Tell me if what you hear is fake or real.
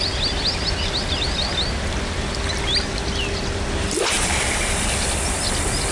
real